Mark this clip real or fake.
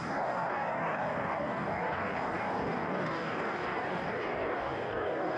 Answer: fake